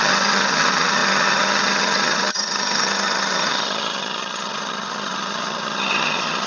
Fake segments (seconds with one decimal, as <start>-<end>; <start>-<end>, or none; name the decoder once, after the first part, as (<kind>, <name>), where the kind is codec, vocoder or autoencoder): 0.0-6.5 (vocoder, HiFi-GAN)